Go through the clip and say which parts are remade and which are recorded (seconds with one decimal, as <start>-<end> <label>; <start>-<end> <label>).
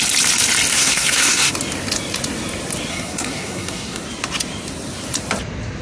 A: 0.0-0.7 recorded; 0.7-1.5 remade; 1.5-2.9 recorded; 2.9-4.0 remade; 4.0-5.8 recorded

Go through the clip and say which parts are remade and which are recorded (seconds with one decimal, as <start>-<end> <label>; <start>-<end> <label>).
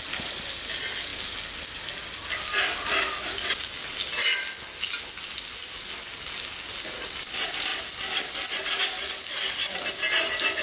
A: 0.0-10.6 recorded